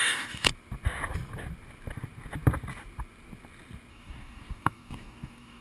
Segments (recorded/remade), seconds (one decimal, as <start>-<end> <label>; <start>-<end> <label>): 0.0-0.5 remade; 0.5-3.9 recorded; 3.9-5.6 remade